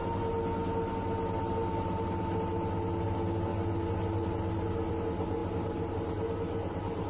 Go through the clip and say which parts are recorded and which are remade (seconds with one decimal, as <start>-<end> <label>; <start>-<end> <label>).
0.0-7.1 recorded